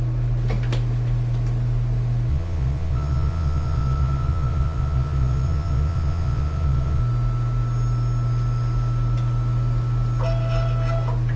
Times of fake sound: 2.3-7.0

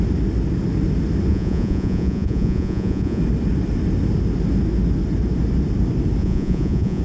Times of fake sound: 1.3-3.2; 6.2-7.0

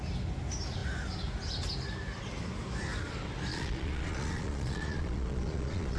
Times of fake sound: 3.5-6.0

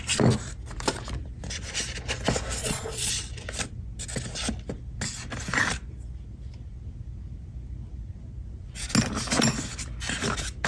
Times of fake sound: 2.6-3.1

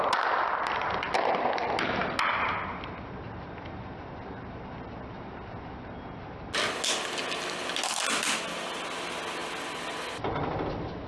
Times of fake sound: none

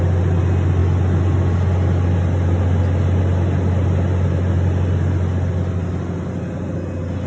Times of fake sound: none

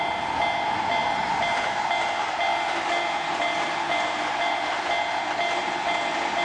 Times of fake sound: none

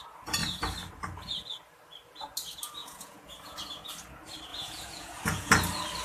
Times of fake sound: 2.8-3.9; 4.5-5.5